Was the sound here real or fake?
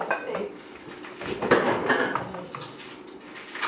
real